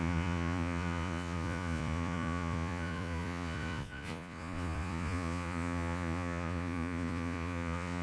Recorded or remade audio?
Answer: remade